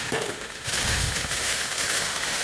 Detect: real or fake fake